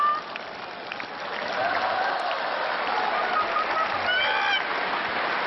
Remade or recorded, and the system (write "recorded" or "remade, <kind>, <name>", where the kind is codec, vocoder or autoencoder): recorded